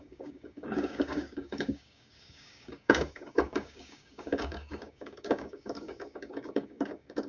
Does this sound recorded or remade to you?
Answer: remade